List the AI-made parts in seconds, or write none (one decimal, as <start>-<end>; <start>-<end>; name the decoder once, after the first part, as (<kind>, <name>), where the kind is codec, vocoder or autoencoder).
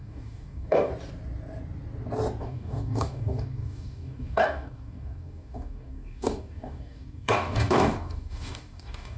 0.0-0.9 (codec, DAC); 2.4-9.2